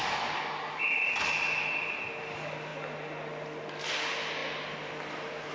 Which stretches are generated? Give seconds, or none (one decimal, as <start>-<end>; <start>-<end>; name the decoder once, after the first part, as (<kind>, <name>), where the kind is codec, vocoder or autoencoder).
none